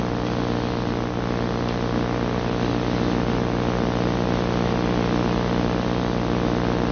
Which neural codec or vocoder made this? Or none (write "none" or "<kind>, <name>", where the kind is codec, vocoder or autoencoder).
none